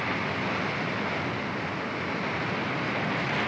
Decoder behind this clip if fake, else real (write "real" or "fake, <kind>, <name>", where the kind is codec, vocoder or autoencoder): real